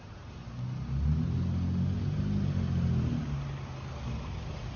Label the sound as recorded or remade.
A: recorded